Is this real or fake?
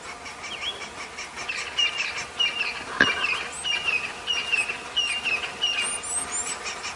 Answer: real